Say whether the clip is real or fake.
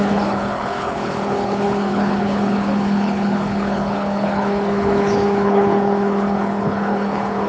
fake